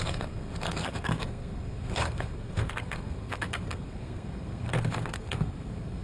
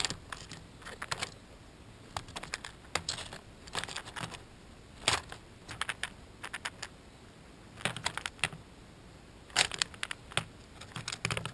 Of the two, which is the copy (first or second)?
first